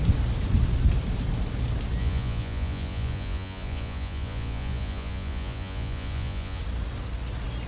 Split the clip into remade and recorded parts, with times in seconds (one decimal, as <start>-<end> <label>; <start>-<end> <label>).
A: 0.0-2.0 recorded; 2.0-6.6 remade; 6.6-7.7 recorded